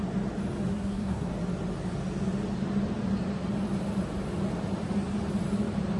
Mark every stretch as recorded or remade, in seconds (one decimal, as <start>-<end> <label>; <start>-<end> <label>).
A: 0.0-0.7 recorded; 0.7-1.3 remade; 1.3-6.0 recorded